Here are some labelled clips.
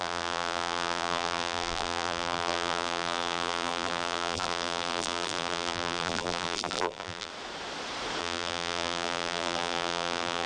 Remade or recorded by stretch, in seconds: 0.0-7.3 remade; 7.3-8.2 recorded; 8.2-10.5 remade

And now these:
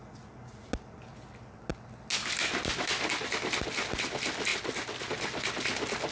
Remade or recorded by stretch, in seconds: 0.0-4.5 recorded; 4.5-5.1 remade; 5.1-6.1 recorded

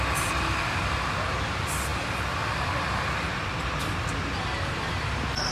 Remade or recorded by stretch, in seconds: 0.0-5.5 recorded